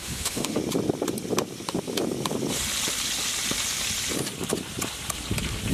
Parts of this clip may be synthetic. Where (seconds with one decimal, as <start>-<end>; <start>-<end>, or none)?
0.0-0.6

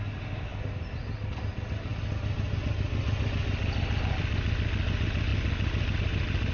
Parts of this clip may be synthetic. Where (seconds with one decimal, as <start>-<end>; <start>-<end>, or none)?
none